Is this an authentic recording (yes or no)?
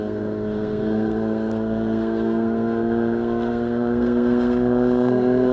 no